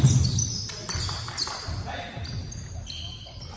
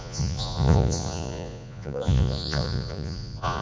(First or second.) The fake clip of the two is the second